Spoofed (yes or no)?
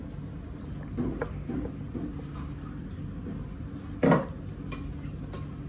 no